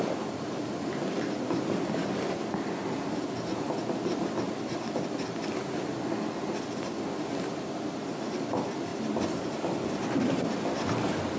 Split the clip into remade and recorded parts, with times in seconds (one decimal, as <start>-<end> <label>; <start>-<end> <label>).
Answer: 0.0-8.9 recorded; 8.9-9.9 remade; 9.9-11.4 recorded